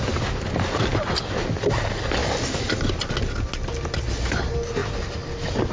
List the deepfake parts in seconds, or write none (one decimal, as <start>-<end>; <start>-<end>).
4.8-5.7

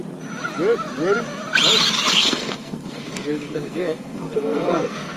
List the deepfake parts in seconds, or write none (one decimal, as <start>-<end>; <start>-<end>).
2.1-5.2

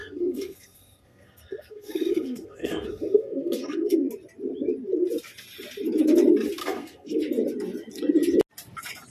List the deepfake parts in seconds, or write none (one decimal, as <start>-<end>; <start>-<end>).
0.0-4.1; 6.6-7.2

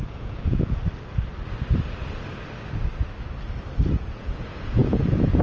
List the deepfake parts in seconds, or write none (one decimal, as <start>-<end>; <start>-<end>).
0.0-0.8; 4.0-5.4

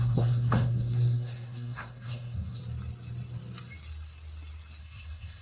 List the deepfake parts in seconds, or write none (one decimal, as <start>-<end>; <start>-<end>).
0.0-2.6; 4.8-5.4